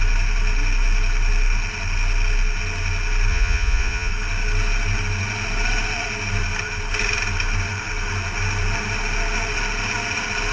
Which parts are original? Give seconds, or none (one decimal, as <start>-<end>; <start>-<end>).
0.0-3.3; 4.1-10.5